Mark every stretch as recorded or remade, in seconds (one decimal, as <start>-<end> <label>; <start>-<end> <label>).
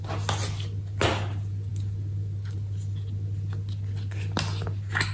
0.0-5.1 recorded